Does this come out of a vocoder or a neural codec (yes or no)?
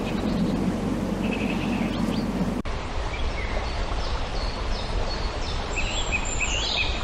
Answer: no